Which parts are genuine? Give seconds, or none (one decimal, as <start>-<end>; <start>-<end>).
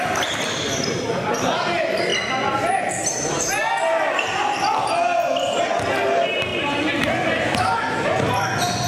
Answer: 0.0-8.9